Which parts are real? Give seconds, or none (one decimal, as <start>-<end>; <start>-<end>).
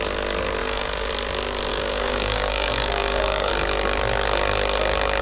0.0-0.6; 1.1-1.7; 3.5-5.2